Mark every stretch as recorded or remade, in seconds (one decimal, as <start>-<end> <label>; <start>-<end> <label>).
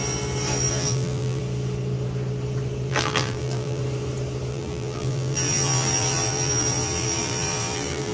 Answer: 0.0-0.7 recorded; 0.7-1.4 remade; 1.4-2.9 recorded; 2.9-3.8 remade; 3.8-4.5 recorded; 4.5-8.1 remade